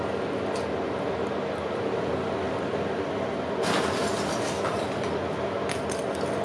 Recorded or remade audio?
recorded